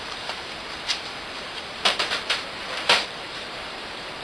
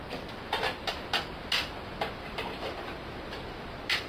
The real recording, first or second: second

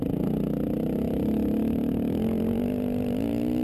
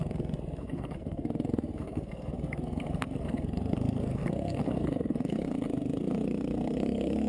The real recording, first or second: first